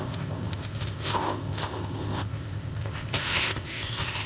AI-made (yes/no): yes